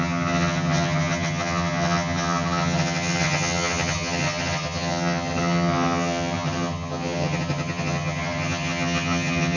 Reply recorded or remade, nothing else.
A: remade